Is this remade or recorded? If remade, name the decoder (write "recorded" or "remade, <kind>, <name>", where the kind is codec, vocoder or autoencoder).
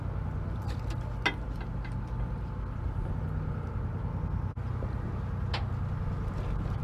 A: recorded